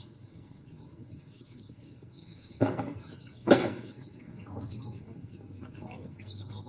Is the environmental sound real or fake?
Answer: fake